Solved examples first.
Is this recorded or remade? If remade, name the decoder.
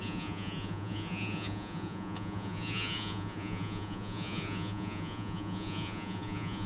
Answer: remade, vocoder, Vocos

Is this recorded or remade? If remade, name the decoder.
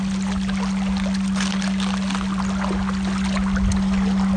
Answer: recorded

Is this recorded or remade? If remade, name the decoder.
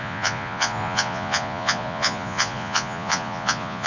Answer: remade, vocoder, Vocos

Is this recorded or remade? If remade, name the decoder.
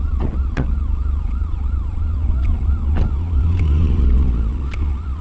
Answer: remade, vocoder, Vocos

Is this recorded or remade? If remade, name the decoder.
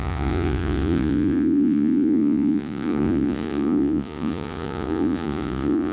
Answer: remade, vocoder, Vocos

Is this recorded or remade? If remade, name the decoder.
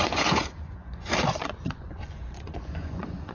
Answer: remade, vocoder, Vocos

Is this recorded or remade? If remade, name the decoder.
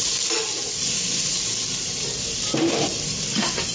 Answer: recorded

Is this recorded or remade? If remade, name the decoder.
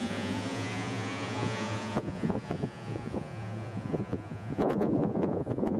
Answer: remade, vocoder, Vocos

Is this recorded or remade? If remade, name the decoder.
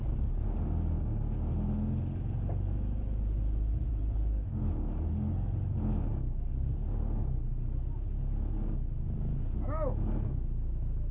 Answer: recorded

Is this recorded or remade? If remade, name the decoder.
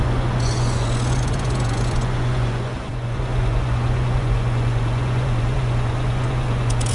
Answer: remade, vocoder, Vocos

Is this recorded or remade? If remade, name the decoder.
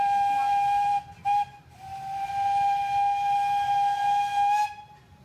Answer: recorded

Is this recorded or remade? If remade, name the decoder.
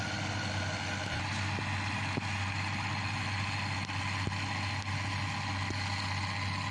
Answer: recorded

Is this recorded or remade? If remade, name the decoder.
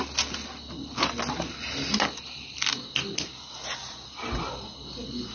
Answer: recorded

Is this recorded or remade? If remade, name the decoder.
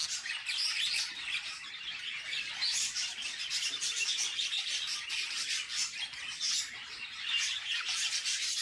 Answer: recorded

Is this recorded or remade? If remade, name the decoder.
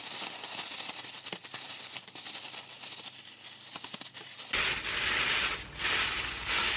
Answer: recorded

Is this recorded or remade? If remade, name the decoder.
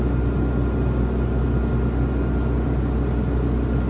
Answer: recorded